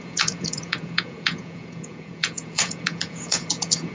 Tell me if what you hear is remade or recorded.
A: remade